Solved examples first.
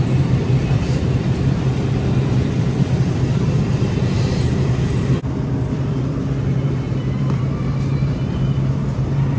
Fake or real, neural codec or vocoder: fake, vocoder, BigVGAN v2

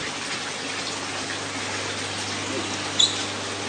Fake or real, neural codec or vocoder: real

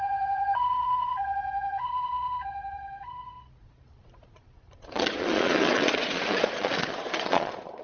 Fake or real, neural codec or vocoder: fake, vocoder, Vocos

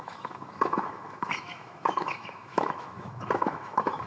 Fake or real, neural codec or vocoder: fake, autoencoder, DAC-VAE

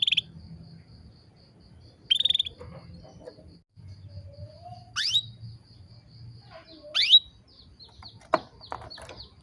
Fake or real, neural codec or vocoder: real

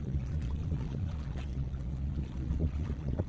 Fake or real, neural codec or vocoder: fake, vocoder, Vocos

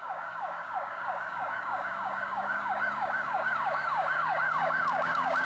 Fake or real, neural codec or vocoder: fake, codec, DAC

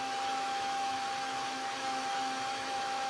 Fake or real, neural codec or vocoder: fake, autoencoder, DAC-VAE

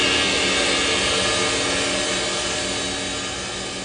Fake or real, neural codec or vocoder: real